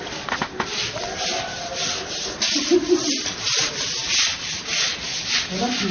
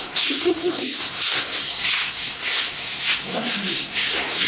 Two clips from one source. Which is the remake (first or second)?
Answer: second